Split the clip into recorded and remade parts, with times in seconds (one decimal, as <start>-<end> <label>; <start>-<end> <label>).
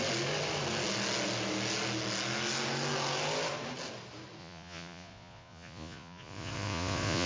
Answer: 0.0-4.4 recorded; 4.4-7.3 remade